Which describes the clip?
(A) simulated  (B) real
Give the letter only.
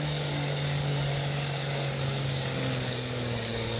A